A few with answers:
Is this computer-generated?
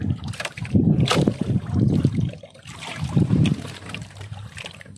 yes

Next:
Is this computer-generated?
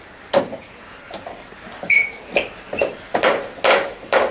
yes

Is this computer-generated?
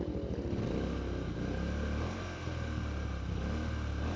no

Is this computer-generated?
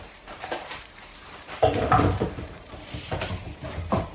yes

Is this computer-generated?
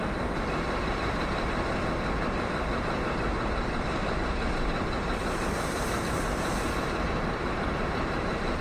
yes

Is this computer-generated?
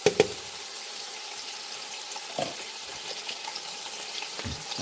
yes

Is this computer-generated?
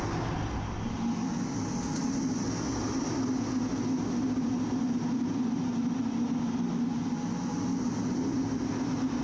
no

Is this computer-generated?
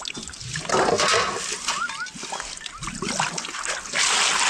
no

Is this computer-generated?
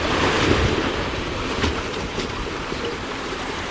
yes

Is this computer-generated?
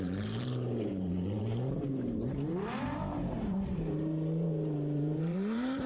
yes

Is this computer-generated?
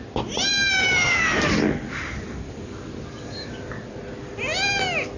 no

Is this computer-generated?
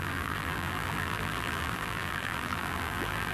yes